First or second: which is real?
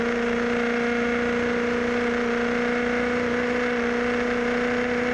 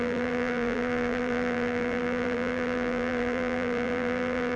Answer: first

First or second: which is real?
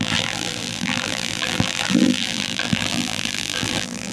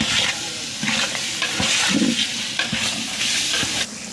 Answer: second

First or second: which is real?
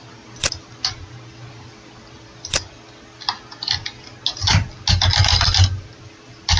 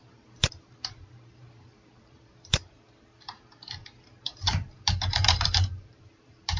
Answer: first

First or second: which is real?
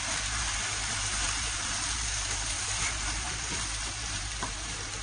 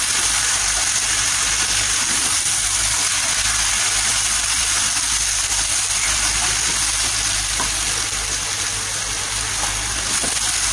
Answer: second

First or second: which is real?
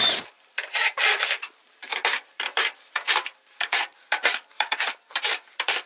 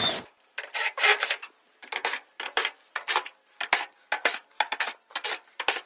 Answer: second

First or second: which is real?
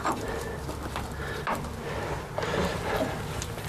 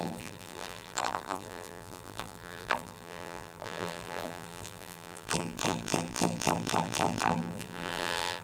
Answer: first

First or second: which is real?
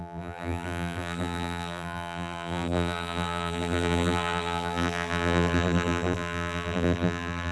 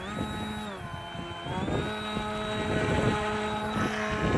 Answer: second